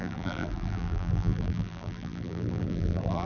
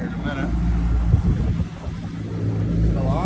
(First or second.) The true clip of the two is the second